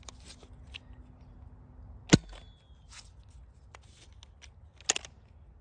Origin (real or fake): real